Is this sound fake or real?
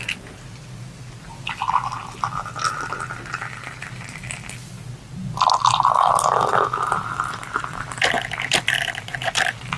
real